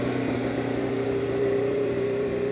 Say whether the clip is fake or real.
fake